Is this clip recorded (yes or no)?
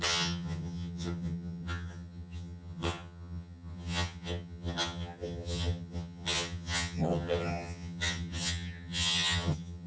no